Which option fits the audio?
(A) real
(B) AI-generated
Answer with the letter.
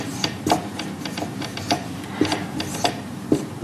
B